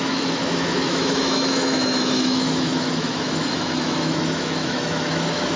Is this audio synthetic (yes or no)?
yes